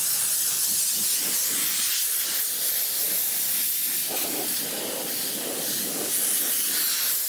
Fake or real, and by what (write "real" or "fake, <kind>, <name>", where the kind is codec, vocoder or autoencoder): real